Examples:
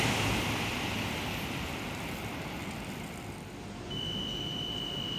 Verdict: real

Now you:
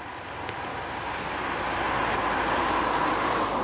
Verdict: real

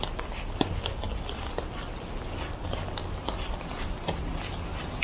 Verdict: real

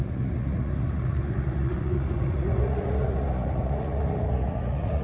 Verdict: fake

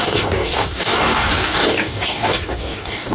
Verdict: fake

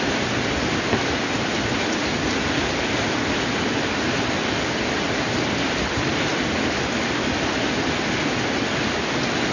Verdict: real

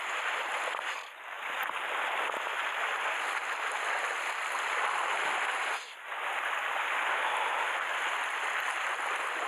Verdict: real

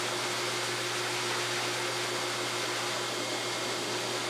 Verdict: real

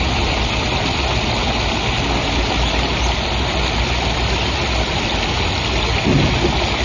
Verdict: real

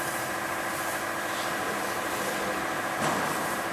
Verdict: fake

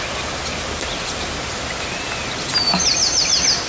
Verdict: real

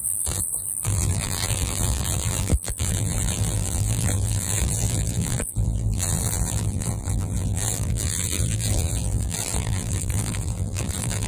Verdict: fake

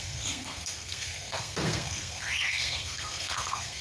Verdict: fake